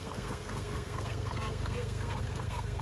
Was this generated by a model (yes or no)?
yes